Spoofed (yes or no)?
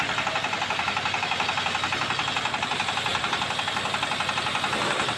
no